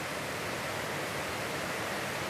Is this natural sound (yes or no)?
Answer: yes